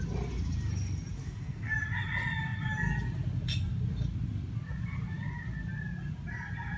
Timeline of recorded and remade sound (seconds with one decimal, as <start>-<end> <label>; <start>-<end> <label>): 0.0-1.2 recorded; 1.2-1.7 remade; 1.7-6.8 recorded